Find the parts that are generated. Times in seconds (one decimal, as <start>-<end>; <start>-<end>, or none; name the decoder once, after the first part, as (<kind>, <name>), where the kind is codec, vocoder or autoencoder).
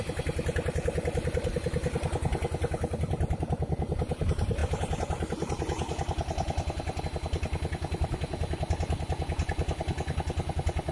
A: none